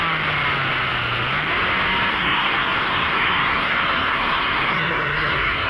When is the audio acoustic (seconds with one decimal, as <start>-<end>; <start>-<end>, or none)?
0.0-2.1